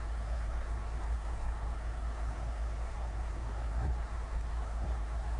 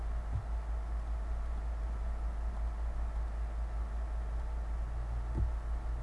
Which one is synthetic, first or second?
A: first